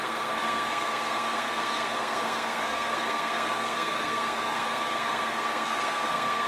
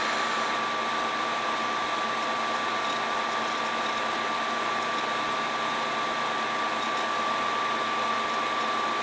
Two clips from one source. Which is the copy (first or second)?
first